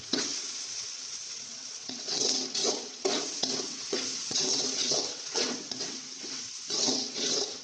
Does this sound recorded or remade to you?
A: remade